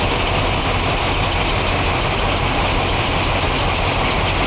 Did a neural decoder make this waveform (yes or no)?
no